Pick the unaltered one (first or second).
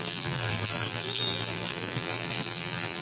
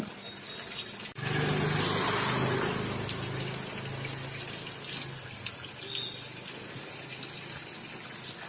second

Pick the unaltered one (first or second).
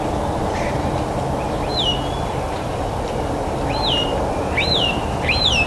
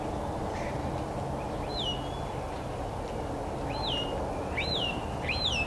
second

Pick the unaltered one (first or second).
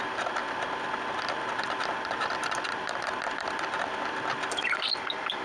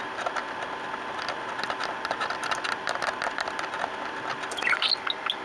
second